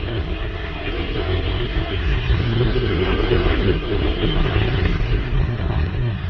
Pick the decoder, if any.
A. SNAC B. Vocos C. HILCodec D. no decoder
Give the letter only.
A